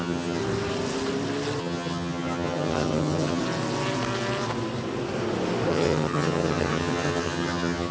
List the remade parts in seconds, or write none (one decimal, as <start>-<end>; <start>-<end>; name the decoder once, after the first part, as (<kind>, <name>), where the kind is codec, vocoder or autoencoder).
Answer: 0.0-0.4 (vocoder, HiFi-GAN); 1.6-3.4; 5.7-7.9